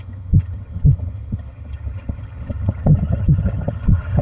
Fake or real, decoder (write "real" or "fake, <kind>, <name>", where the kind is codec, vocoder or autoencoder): fake, vocoder, HiFi-GAN